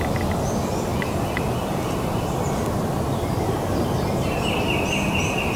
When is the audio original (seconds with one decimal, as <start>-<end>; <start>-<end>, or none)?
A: 0.0-5.6